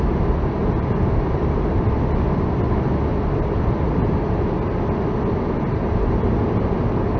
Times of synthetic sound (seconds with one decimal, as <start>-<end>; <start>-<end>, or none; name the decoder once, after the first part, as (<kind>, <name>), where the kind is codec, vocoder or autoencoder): none